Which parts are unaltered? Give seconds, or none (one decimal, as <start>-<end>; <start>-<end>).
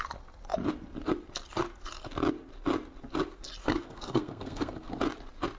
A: 0.0-3.6; 4.9-5.6